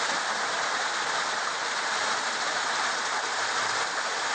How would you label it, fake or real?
real